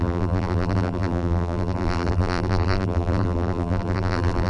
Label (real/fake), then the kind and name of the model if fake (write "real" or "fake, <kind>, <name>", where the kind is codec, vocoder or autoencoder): fake, vocoder, BigVGAN v2